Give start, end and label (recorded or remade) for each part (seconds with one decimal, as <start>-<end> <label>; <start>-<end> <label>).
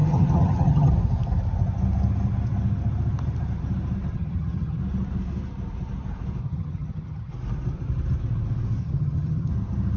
0.0-0.9 remade; 0.9-4.1 recorded; 4.1-4.8 remade; 4.8-6.4 recorded; 6.4-7.3 remade; 7.3-8.8 recorded; 8.8-9.5 remade; 9.5-10.0 recorded